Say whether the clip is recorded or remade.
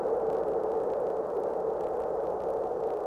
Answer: recorded